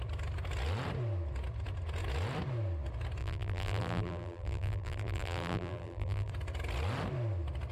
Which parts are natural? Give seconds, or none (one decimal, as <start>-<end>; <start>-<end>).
0.0-3.2; 6.3-7.7